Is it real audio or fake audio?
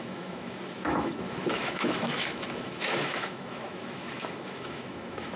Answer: fake